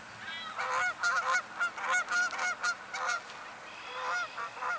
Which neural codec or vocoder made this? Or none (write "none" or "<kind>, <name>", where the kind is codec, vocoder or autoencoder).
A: none